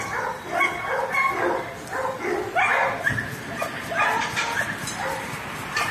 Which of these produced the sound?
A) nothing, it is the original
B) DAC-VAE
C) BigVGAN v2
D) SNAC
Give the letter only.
A